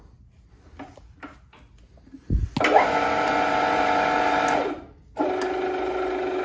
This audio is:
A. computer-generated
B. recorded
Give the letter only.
B